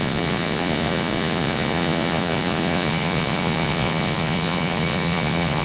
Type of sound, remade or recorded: remade